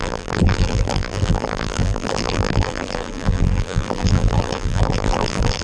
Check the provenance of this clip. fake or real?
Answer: fake